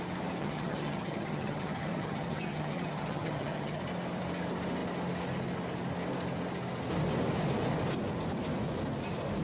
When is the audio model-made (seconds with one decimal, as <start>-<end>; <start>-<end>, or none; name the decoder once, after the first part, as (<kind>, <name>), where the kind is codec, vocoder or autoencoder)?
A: 0.4-3.8 (vocoder, HiFi-GAN)